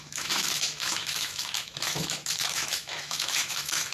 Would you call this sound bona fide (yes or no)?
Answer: no